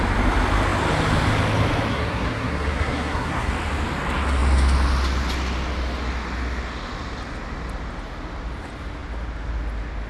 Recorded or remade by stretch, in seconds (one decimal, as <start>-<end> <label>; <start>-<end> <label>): 0.0-1.9 recorded; 1.9-3.5 remade; 3.5-10.1 recorded